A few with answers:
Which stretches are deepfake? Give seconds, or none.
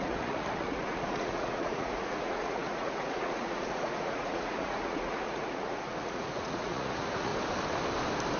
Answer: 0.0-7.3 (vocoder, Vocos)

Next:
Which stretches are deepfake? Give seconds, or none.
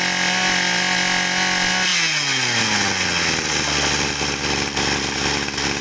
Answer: none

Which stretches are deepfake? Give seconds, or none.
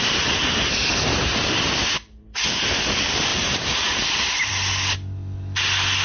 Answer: 3.3-4.5 (vocoder, BigVGAN v2)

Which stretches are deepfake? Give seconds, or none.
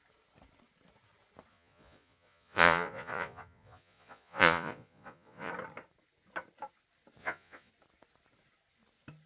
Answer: 1.5-5.5 (vocoder, Vocos); 7.2-7.7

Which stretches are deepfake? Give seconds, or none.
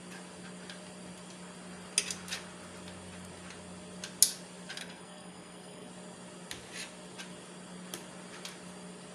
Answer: 4.8-5.9 (codec, SNAC)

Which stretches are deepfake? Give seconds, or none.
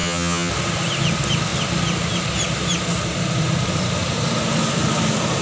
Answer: 0.0-0.5 (vocoder, HiFi-GAN)